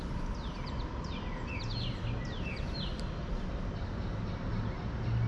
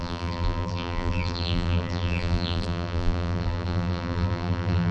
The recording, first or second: first